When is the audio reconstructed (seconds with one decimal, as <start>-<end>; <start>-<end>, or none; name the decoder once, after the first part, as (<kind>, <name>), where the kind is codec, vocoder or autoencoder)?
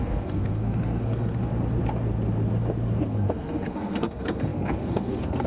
0.0-1.5 (codec, SNAC); 3.0-5.5